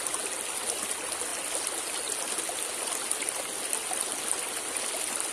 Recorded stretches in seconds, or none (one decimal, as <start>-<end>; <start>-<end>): 0.0-5.3